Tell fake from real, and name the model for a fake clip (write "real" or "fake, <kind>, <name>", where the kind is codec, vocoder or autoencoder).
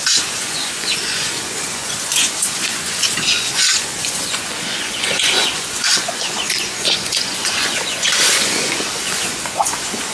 fake, vocoder, Vocos